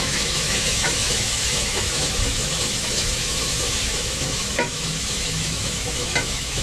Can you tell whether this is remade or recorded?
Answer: remade